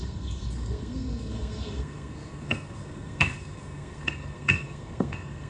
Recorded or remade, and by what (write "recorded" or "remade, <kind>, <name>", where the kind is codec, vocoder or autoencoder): remade, codec, SNAC